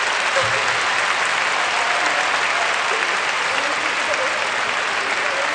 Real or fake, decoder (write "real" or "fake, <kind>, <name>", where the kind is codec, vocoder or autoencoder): real